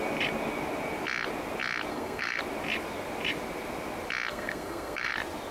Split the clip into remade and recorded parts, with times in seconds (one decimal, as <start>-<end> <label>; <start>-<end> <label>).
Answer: 0.0-1.9 recorded; 1.9-2.4 remade; 2.4-4.3 recorded; 4.3-5.1 remade; 5.1-5.5 recorded